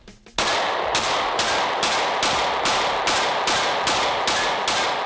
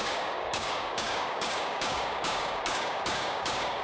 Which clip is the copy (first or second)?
second